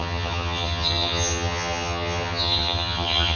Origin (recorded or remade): remade